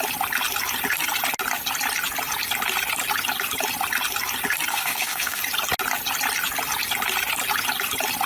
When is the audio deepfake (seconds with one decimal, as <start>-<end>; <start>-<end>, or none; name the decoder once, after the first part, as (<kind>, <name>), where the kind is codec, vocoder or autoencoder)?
4.7-5.4 (codec, DAC)